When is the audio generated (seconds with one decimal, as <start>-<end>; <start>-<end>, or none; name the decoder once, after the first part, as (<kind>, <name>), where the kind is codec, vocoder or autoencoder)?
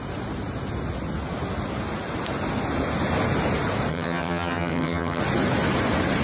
3.9-5.2 (vocoder, HiFi-GAN)